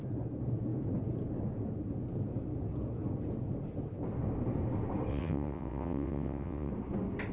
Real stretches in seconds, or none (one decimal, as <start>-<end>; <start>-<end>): 0.0-5.1; 6.7-7.3